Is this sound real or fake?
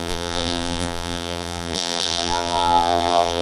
fake